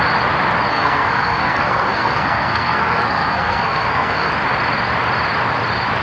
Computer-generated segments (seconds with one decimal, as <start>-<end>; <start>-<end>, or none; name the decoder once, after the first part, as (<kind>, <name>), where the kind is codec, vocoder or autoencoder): 0.7-4.3 (codec, SNAC)